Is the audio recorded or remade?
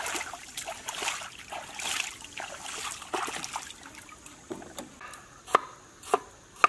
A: recorded